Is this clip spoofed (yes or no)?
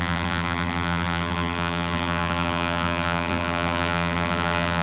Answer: yes